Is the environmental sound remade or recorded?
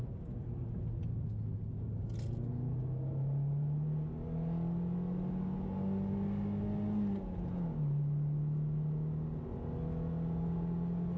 recorded